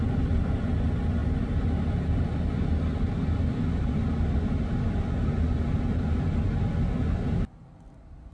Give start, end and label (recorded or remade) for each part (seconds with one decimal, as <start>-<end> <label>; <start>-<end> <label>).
0.0-8.3 recorded